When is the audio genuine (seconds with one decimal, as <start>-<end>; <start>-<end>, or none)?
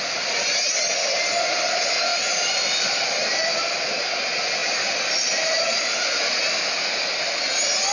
0.0-7.9